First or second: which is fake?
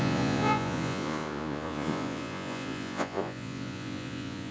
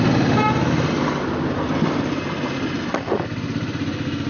first